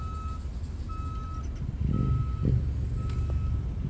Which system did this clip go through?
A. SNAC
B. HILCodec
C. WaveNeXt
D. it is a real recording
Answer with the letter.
D